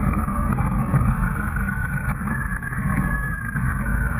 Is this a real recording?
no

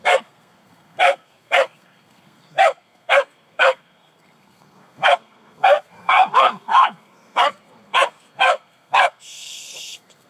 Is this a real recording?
no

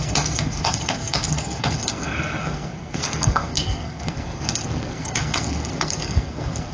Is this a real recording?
no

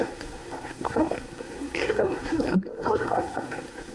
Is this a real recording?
no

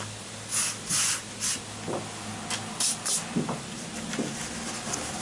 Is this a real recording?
yes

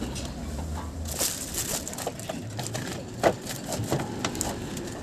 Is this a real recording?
yes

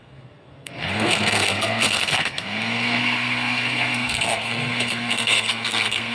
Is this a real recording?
no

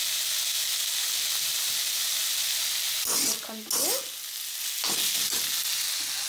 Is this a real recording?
yes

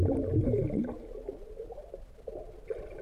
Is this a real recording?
yes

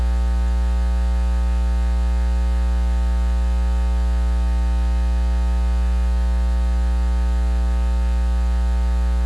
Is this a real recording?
yes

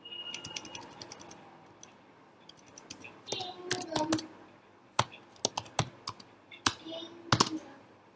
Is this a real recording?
yes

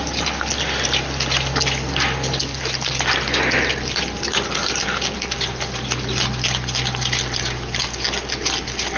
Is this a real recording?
yes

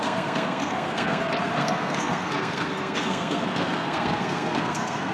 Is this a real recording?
no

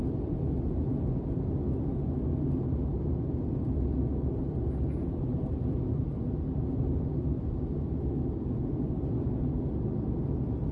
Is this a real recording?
yes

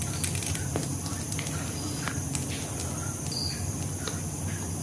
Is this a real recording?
yes